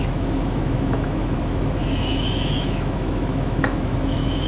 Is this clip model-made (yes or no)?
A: yes